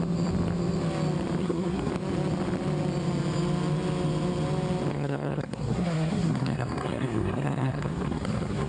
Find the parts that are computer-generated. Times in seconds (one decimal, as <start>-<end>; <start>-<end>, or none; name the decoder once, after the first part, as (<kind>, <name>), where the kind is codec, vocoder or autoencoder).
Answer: 1.4-1.9 (codec, SNAC); 4.9-8.7